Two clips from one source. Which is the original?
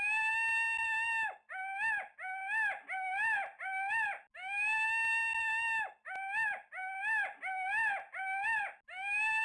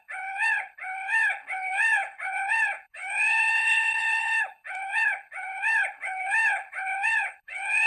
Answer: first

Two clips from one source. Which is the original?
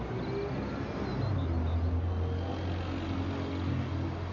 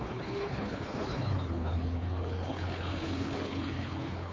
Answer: first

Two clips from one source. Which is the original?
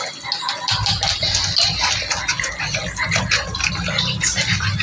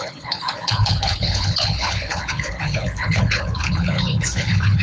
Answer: first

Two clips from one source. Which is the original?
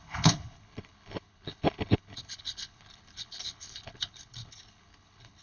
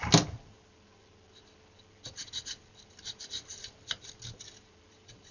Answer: second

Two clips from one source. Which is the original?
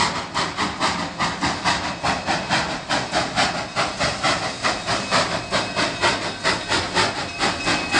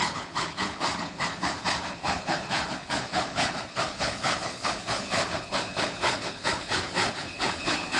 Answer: first